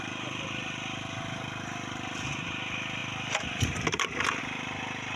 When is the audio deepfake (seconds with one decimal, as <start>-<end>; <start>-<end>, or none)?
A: none